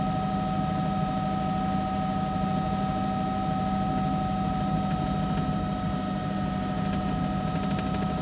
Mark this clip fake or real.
real